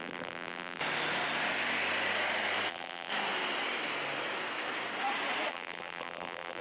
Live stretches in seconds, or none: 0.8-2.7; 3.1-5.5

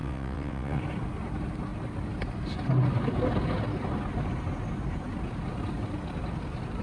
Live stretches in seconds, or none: 0.8-6.8

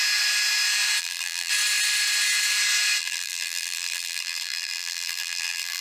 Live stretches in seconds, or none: 0.0-1.0; 1.5-3.0